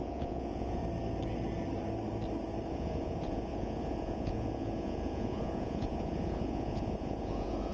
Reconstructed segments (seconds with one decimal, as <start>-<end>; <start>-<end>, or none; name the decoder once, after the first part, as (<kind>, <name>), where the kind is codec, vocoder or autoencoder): 0.0-0.8 (vocoder, Vocos); 2.7-7.7